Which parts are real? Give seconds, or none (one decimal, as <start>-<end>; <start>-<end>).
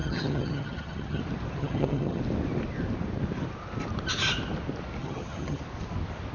1.2-1.6; 2.2-5.0; 5.6-6.3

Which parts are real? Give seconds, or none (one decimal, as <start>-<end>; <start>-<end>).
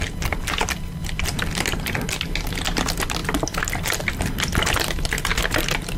0.0-6.0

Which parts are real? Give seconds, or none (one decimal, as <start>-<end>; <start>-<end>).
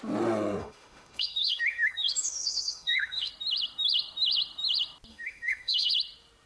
0.0-0.6; 3.3-5.1; 5.9-6.5